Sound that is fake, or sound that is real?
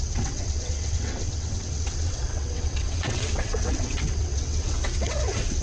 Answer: fake